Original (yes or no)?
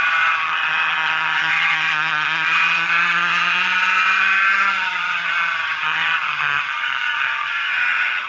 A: no